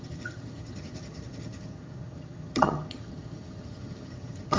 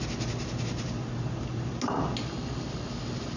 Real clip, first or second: second